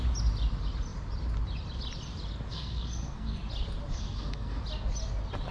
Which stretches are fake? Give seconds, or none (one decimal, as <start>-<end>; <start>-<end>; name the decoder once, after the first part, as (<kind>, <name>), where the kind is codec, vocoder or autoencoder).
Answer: 2.5-3.4 (codec, SNAC); 3.9-4.6